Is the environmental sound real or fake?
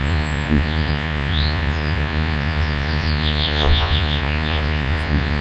fake